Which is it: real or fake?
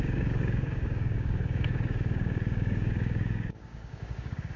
fake